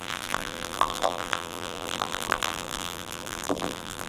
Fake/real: fake